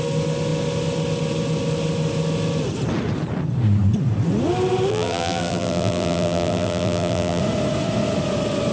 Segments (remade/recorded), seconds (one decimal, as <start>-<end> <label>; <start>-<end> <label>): 0.0-4.9 recorded; 4.9-7.4 remade; 7.4-8.7 recorded

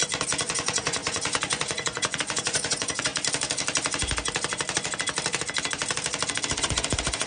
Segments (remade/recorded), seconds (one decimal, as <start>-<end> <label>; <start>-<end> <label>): 0.0-0.5 recorded; 0.5-3.1 remade; 3.1-6.6 recorded; 6.6-7.3 remade

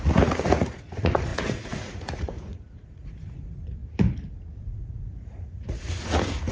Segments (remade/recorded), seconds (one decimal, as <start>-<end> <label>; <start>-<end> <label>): 0.0-3.8 remade; 3.8-4.6 recorded; 4.6-6.5 remade

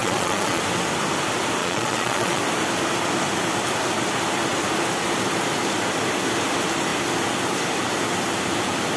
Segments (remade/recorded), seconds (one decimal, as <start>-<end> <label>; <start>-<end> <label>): 0.0-0.6 remade; 0.6-1.6 recorded; 1.6-2.4 remade; 2.4-9.0 recorded

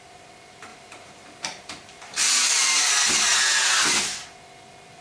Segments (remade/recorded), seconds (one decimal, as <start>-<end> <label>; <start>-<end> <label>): 0.0-0.7 recorded; 0.7-2.9 remade; 2.9-5.0 recorded

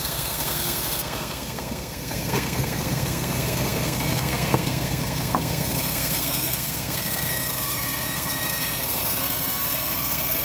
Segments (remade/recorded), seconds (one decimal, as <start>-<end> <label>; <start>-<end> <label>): 0.0-10.4 remade

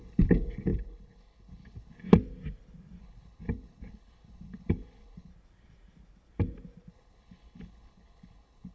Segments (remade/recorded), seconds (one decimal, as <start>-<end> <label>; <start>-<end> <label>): 0.0-2.1 remade; 2.1-3.0 recorded; 3.0-5.3 remade; 5.3-6.9 recorded; 6.9-8.7 remade

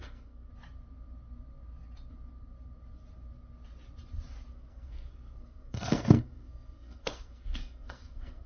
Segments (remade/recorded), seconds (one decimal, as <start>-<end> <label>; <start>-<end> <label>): 0.0-0.5 remade; 0.5-4.5 recorded; 4.5-8.5 remade